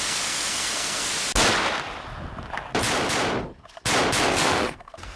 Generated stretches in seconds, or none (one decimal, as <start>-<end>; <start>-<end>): 0.0-1.1; 4.2-5.2